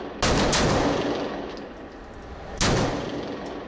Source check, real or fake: real